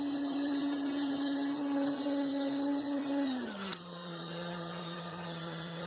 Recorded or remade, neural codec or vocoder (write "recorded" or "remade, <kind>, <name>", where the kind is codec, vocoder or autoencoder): remade, vocoder, HiFi-GAN